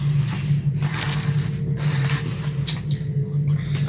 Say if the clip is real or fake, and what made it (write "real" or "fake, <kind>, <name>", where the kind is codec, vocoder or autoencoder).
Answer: real